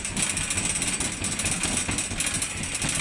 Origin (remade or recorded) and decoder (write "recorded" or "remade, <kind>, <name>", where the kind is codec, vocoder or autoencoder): recorded